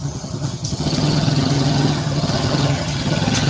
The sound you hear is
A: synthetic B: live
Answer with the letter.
A